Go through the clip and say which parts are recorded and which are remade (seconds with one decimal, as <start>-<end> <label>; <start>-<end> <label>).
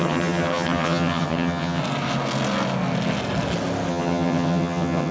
0.0-1.8 remade; 1.8-3.9 recorded; 3.9-5.1 remade